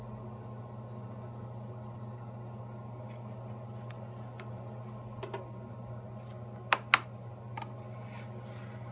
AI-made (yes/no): no